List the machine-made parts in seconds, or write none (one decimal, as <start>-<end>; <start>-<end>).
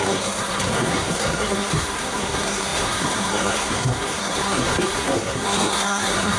0.0-6.4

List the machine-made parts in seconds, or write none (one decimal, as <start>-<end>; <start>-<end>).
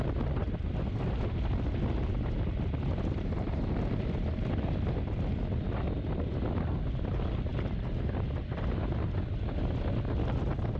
none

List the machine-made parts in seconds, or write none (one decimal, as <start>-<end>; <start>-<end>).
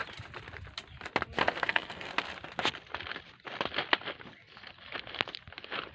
1.6-2.1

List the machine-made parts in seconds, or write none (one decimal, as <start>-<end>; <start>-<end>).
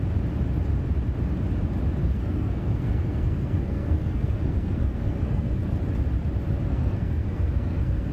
2.0-5.8; 6.7-8.1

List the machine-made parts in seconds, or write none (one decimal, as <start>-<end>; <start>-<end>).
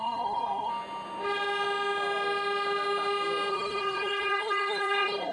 0.0-0.7; 3.5-5.3